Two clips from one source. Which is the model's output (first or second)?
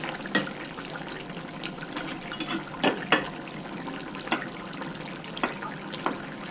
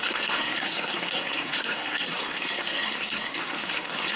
second